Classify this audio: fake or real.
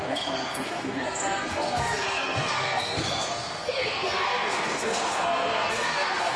fake